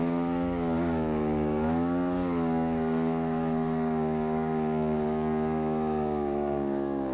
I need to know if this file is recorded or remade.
remade